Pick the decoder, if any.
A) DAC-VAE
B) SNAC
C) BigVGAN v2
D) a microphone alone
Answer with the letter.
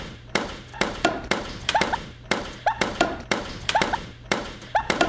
C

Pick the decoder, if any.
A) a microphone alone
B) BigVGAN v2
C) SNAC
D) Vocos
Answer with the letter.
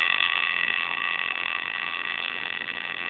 B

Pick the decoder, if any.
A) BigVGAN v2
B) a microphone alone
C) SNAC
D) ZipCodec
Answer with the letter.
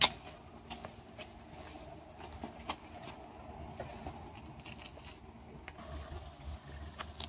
B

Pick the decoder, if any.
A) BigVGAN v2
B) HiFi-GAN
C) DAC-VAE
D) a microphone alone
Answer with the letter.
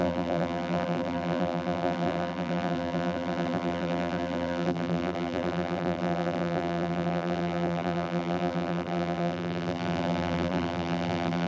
A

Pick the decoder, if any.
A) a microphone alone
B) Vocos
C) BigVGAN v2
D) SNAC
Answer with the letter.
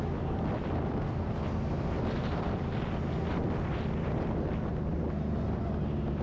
C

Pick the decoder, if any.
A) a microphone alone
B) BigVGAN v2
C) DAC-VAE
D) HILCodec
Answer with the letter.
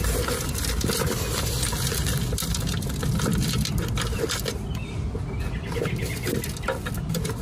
A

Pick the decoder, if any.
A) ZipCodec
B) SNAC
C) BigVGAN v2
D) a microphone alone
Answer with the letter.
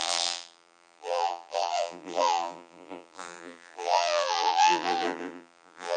C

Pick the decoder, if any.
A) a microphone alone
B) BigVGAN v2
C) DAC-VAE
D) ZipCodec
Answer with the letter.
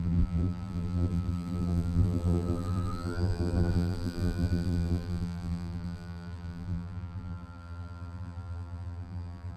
B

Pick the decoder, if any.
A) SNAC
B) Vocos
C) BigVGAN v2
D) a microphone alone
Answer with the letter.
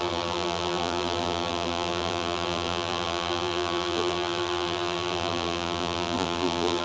C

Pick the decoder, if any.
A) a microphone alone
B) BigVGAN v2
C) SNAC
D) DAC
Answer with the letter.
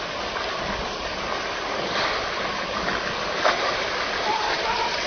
A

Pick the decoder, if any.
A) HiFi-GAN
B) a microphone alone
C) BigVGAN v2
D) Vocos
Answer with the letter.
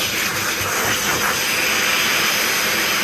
B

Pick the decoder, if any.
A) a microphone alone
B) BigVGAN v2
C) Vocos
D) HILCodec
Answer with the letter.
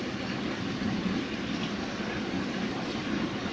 B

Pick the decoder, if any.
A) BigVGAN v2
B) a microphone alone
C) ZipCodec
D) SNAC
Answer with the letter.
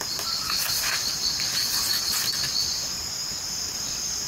B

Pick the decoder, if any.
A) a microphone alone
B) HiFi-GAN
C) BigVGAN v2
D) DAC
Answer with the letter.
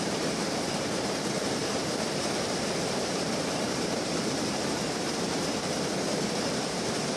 C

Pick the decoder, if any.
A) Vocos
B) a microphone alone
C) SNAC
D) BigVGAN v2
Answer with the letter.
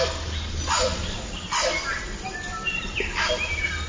B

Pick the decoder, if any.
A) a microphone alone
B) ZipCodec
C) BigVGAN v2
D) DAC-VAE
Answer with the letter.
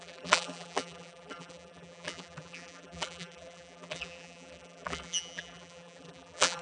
C